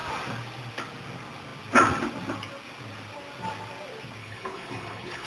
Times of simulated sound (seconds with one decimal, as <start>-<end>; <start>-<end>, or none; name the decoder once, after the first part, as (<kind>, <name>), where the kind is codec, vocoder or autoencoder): 4.2-5.3 (codec, HILCodec)